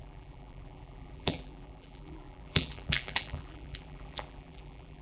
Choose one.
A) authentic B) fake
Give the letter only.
B